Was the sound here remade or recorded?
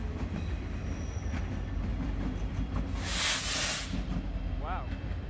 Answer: recorded